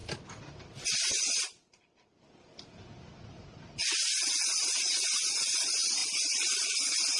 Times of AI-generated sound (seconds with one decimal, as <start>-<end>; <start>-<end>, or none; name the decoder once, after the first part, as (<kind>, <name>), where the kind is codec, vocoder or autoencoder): none